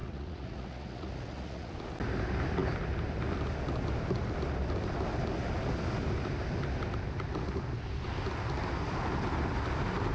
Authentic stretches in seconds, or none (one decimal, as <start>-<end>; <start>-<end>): 1.7-10.1